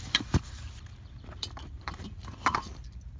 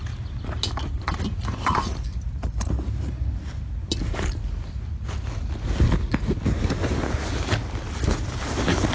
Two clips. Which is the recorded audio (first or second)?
second